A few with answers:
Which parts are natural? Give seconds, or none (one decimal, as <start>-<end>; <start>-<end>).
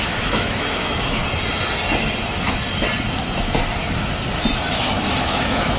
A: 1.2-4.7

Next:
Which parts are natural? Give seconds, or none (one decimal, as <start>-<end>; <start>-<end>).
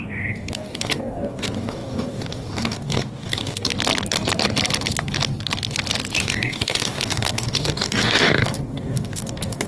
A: 3.7-6.2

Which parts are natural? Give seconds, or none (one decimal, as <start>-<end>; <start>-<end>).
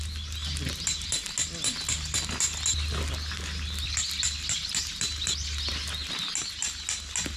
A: 0.0-7.4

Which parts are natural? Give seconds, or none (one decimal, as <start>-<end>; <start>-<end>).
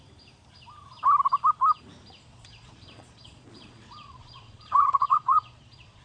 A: 0.0-2.3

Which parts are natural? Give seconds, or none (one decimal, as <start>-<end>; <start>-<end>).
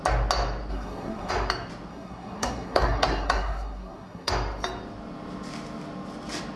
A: 0.0-0.7; 1.3-1.9; 4.3-6.6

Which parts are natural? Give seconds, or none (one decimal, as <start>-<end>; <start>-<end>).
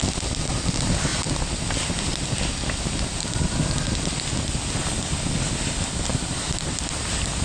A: 0.0-1.1; 2.2-6.1; 6.9-7.4